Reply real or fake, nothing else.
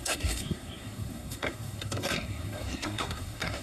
fake